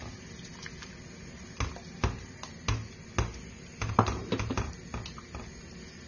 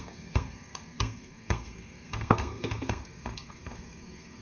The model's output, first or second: second